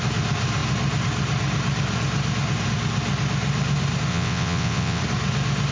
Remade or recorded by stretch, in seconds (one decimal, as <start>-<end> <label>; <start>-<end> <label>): 0.0-4.1 recorded; 4.1-5.0 remade; 5.0-5.7 recorded